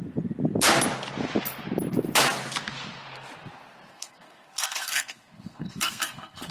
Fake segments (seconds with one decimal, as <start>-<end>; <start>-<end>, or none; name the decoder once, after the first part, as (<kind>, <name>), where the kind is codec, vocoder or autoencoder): 3.9-6.5 (codec, SNAC)